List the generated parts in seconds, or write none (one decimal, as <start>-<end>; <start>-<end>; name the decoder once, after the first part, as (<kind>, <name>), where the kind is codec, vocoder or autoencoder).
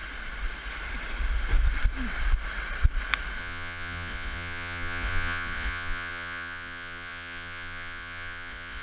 3.4-8.8 (vocoder, Vocos)